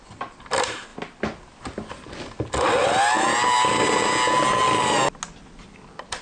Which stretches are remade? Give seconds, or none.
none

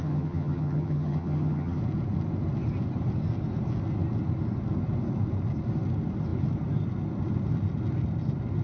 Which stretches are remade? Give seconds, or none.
0.0-1.8 (vocoder, HiFi-GAN)

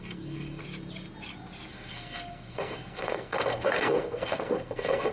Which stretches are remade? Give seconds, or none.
0.0-0.6 (codec, SNAC); 1.7-5.1

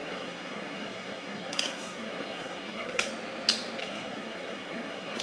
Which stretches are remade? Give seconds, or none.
0.0-3.1 (codec, SNAC); 3.8-5.2

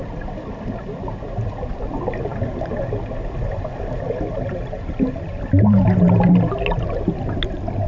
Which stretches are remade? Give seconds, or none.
none

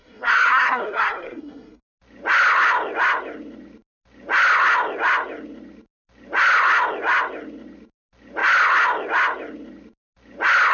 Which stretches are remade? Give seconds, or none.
0.0-1.8 (codec, SNAC)

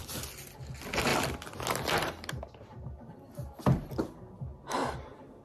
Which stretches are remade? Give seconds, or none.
none

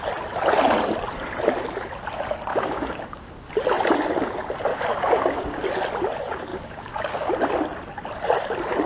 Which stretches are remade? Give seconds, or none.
2.5-3.5 (codec, DAC); 4.7-5.6; 6.5-7.3